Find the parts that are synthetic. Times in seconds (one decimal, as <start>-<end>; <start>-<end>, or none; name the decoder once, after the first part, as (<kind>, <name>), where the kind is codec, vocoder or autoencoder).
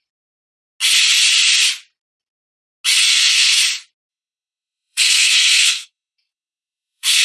3.1-3.6 (codec, SNAC); 4.1-7.2